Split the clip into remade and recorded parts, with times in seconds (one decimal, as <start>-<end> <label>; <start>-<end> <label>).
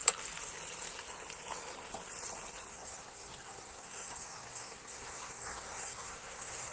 0.0-2.7 recorded; 2.7-6.7 remade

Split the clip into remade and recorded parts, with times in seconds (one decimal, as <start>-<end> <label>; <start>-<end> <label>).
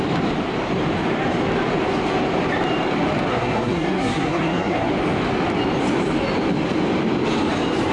0.0-3.3 recorded; 3.3-4.9 remade; 4.9-7.9 recorded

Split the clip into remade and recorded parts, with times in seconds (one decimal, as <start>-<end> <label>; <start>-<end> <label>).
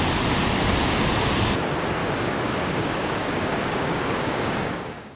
0.0-2.0 recorded; 2.0-5.2 remade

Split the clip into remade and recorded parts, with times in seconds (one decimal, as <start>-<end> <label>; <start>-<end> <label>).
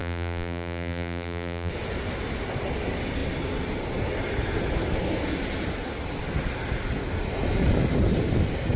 0.0-1.7 remade; 1.7-8.8 recorded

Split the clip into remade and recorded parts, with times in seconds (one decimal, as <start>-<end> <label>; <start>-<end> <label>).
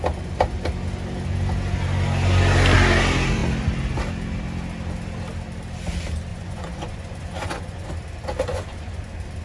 0.0-6.3 recorded; 6.3-7.9 remade; 7.9-8.5 recorded; 8.5-9.0 remade; 9.0-9.4 recorded